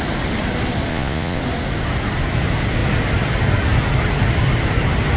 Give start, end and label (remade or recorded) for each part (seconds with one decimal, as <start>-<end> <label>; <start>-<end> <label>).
0.0-0.9 recorded; 0.9-1.4 remade; 1.4-5.2 recorded